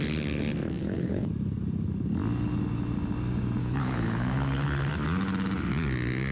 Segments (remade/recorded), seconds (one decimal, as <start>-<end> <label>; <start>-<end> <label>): 0.0-0.8 recorded; 0.8-1.3 remade; 1.3-3.6 recorded; 3.6-4.9 remade; 4.9-6.3 recorded